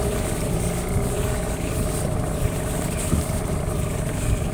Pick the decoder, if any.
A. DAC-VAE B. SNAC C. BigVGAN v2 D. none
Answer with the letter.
D